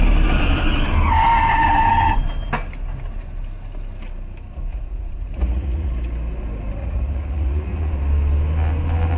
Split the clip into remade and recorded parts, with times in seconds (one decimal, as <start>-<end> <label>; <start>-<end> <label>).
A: 0.0-4.7 recorded; 4.7-5.9 remade; 5.9-6.8 recorded; 6.8-7.9 remade; 7.9-9.2 recorded